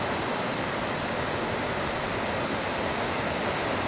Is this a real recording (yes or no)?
yes